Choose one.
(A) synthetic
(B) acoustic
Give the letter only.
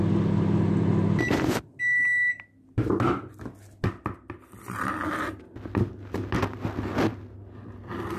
B